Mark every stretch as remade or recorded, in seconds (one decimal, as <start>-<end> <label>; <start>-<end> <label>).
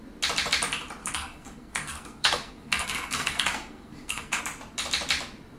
0.0-1.0 recorded; 1.0-4.4 remade; 4.4-5.6 recorded